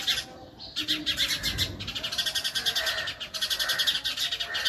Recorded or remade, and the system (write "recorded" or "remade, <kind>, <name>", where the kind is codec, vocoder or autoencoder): recorded